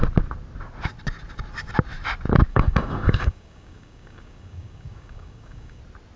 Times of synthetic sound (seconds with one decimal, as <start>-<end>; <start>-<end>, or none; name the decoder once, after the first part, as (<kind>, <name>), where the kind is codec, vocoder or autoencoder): 2.5-5.8 (codec, DAC)